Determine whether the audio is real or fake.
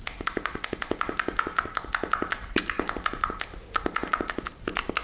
real